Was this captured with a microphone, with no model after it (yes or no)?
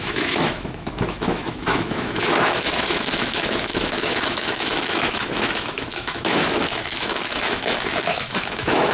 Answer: no